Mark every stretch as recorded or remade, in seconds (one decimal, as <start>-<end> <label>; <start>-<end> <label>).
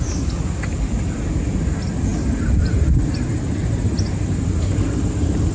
0.0-5.5 recorded